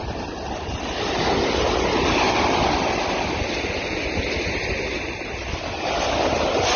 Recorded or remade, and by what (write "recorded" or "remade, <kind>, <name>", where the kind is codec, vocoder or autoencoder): recorded